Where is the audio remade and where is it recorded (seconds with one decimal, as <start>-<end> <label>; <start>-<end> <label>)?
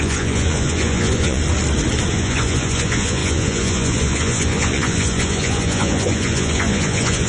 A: 0.0-1.4 remade; 1.4-2.1 recorded; 2.1-7.3 remade